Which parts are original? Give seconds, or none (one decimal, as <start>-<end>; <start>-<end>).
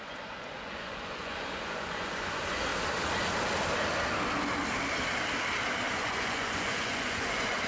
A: 2.7-5.9